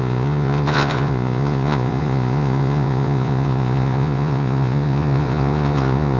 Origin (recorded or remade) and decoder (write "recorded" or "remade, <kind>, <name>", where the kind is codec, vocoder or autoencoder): remade, vocoder, Vocos